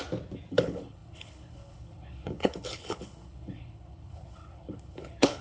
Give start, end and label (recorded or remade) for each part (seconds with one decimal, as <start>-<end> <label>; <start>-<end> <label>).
0.0-0.5 recorded; 0.5-5.4 remade